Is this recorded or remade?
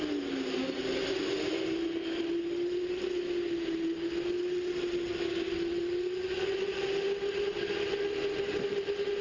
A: recorded